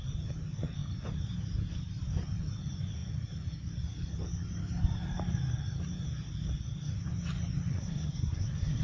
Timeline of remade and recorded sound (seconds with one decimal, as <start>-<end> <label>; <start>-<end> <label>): 0.0-7.7 recorded; 7.7-8.8 remade